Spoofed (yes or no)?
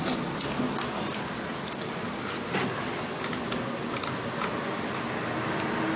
no